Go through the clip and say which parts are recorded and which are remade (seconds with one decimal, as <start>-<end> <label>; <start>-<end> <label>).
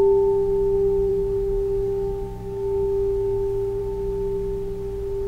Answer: 0.0-1.1 recorded; 1.1-3.8 remade; 3.8-5.3 recorded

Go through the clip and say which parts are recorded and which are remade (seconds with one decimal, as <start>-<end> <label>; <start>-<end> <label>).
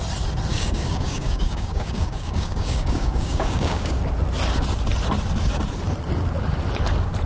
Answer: 0.0-0.5 recorded; 0.5-4.0 remade; 4.0-7.3 recorded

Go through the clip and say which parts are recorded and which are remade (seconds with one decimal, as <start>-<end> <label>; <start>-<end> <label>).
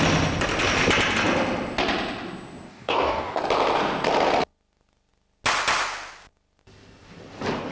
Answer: 0.0-2.7 recorded; 2.7-3.4 remade; 3.4-7.7 recorded